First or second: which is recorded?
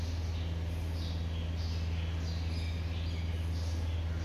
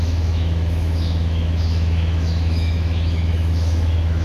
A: first